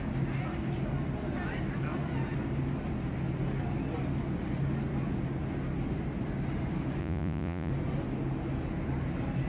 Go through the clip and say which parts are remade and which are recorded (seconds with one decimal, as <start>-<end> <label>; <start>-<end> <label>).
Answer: 0.0-7.0 recorded; 7.0-7.7 remade; 7.7-9.5 recorded